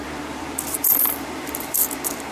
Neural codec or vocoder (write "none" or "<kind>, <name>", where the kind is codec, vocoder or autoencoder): vocoder, BigVGAN v2